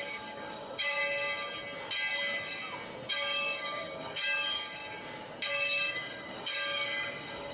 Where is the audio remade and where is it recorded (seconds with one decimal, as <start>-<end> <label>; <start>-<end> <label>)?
0.0-1.0 remade; 1.0-3.1 recorded; 3.1-4.8 remade; 4.8-5.5 recorded; 5.5-7.5 remade

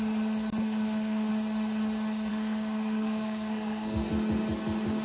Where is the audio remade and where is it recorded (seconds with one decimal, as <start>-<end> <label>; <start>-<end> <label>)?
0.0-0.6 recorded; 0.6-1.3 remade; 1.3-2.3 recorded; 2.3-4.1 remade; 4.1-5.0 recorded

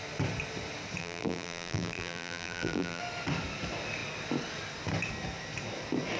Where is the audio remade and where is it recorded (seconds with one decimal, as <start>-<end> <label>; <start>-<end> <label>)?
0.0-1.0 recorded; 1.0-3.0 remade; 3.0-6.2 recorded

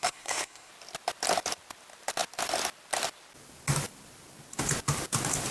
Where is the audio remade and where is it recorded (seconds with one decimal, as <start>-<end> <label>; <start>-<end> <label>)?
0.0-0.7 remade; 0.7-5.5 recorded

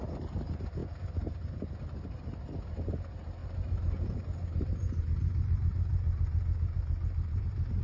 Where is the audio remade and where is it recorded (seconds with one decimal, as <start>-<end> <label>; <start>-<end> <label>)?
0.0-3.4 recorded; 3.4-7.8 remade

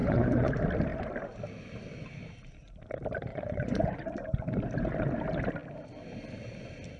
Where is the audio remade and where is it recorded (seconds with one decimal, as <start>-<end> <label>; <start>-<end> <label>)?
0.0-0.5 remade; 0.5-3.3 recorded; 3.3-4.0 remade; 4.0-7.0 recorded

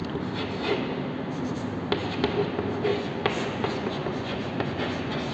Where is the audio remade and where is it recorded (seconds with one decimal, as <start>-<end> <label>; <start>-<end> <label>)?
0.0-2.9 recorded; 2.9-5.3 remade

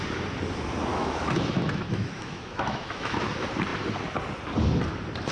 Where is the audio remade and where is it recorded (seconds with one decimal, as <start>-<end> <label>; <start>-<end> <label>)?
0.0-0.9 recorded; 0.9-3.3 remade; 3.3-5.3 recorded